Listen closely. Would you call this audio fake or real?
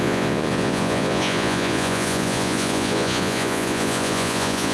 fake